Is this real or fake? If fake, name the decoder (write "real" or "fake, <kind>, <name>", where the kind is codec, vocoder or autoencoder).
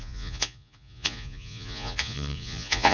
fake, vocoder, Vocos